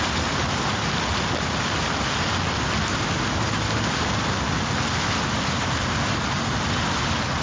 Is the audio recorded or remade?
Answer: recorded